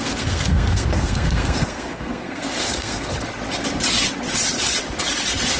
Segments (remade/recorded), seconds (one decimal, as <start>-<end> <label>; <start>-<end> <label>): 0.0-3.1 remade; 3.1-5.6 recorded